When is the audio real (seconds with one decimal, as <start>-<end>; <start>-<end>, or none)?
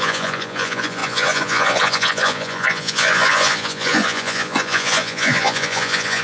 none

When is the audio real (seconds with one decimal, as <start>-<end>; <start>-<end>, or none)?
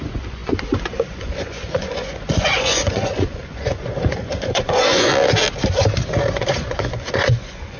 5.1-6.3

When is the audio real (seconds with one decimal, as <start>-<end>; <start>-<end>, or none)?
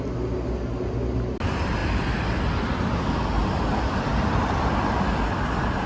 0.0-5.9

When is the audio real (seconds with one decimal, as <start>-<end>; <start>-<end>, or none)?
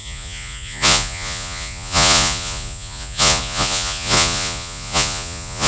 none